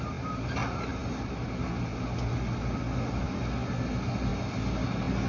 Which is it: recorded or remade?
recorded